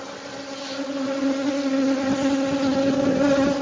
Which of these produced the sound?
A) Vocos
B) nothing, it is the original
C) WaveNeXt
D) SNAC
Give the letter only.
B